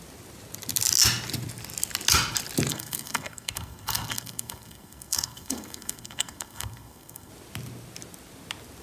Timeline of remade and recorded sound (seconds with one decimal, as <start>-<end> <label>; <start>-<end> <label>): 0.0-2.7 recorded; 2.7-7.3 remade; 7.3-8.8 recorded